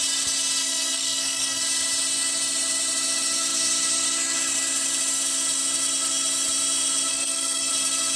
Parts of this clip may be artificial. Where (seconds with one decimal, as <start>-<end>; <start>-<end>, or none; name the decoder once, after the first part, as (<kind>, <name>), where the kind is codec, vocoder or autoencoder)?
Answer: 0.6-1.6 (codec, SNAC); 7.1-7.7